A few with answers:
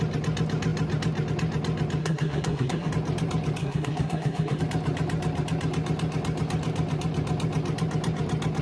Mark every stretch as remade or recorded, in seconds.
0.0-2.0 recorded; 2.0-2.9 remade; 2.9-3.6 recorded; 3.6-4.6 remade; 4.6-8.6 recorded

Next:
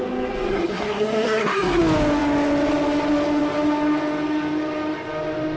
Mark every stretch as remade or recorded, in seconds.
0.0-0.5 recorded; 0.5-1.8 remade; 1.8-5.6 recorded